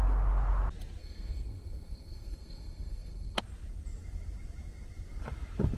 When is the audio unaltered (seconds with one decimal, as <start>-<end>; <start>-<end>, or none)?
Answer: 0.0-1.0; 3.4-5.8